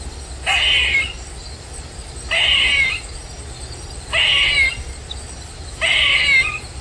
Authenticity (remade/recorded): recorded